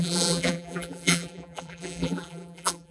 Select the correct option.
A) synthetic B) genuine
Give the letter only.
A